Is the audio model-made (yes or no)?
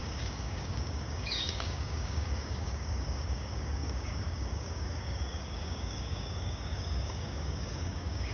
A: yes